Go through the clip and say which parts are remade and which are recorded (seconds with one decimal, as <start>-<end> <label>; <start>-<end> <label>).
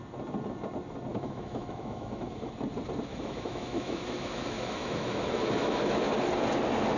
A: 0.0-1.1 recorded; 1.1-2.5 remade; 2.5-3.1 recorded; 3.1-6.0 remade; 6.0-7.0 recorded